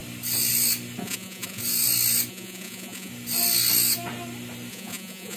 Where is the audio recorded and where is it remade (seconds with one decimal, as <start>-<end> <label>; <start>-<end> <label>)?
0.0-1.0 recorded; 1.0-1.6 remade; 1.6-2.3 recorded; 2.3-3.1 remade; 3.1-4.7 recorded; 4.7-5.4 remade